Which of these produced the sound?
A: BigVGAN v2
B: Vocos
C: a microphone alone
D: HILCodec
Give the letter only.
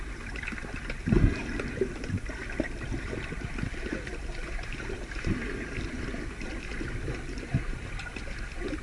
C